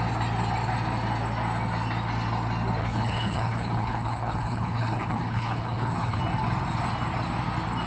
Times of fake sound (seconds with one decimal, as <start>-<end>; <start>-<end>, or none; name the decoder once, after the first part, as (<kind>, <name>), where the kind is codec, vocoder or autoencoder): 2.8-6.2 (codec, HILCodec)